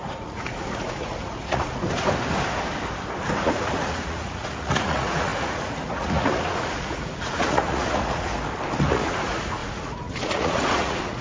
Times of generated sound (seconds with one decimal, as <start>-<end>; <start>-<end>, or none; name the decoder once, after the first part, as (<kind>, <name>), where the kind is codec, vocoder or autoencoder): 0.0-1.7 (vocoder, Vocos); 3.4-8.3; 8.9-11.2